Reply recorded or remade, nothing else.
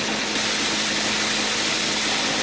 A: recorded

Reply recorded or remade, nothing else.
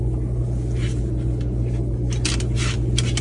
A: recorded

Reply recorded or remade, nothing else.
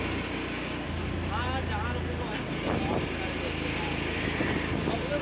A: recorded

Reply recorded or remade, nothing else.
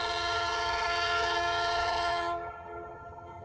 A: remade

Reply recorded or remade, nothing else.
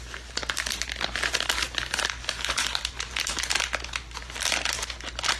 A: recorded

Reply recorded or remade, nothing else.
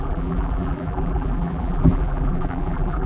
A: remade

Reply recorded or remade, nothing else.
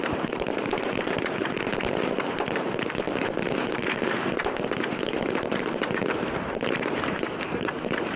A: remade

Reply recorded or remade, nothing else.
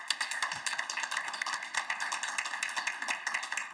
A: recorded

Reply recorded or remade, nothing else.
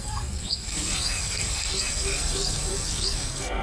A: remade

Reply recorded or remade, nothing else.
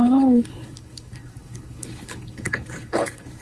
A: remade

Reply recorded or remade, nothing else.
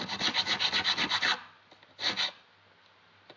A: recorded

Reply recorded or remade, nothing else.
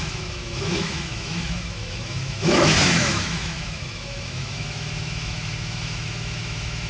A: remade